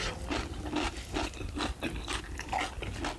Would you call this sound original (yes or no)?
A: yes